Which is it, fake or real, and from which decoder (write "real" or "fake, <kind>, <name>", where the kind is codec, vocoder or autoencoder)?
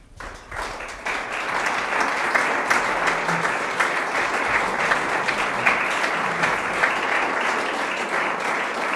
real